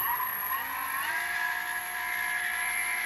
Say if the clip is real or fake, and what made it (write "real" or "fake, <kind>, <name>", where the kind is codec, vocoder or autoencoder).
real